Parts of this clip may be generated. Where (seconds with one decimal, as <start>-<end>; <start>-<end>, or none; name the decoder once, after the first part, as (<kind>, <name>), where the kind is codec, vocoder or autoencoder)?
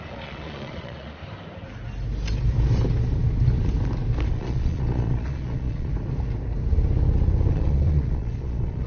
0.0-1.2 (vocoder, Vocos); 4.3-5.9; 7.5-8.9